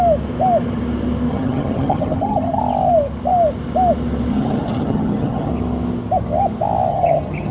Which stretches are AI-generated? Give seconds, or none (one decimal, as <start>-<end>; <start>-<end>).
1.3-2.6; 4.3-5.5; 6.9-7.5